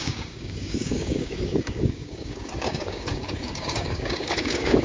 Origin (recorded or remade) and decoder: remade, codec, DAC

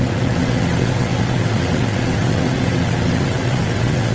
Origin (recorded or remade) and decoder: remade, vocoder, WaveNeXt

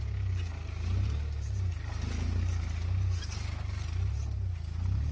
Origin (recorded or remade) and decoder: recorded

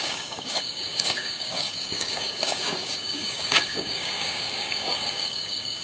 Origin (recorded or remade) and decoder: remade, codec, DAC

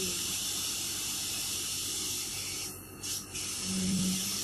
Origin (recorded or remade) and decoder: remade, vocoder, BigVGAN v2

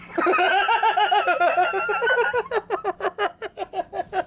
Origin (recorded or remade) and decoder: recorded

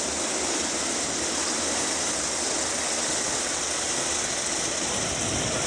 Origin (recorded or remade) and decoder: recorded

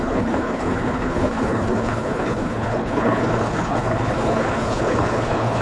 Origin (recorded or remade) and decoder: remade, codec, HILCodec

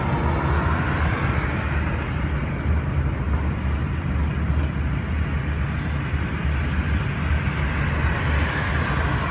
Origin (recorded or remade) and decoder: recorded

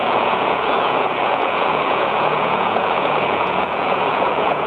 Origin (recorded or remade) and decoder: remade, vocoder, Vocos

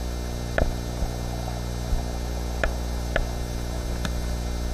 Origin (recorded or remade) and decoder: recorded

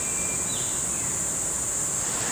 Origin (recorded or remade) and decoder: recorded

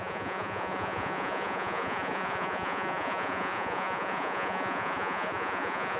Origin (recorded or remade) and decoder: remade, vocoder, Vocos